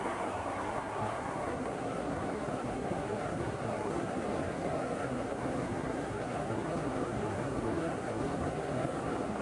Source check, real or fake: fake